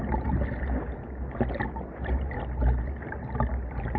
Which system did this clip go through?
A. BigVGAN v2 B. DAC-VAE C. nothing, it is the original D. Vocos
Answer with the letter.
C